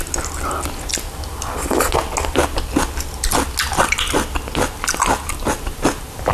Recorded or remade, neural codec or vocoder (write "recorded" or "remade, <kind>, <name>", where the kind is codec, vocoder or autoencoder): recorded